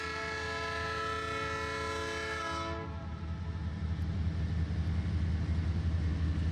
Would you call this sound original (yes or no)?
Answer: yes